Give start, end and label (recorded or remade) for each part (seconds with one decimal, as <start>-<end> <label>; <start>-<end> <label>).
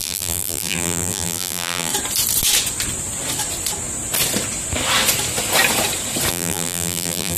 0.0-1.9 remade; 1.9-6.3 recorded; 6.3-7.4 remade